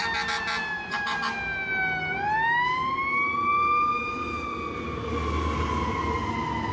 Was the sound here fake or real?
real